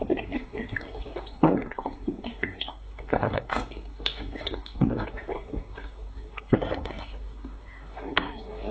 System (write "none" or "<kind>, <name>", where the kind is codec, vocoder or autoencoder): codec, SNAC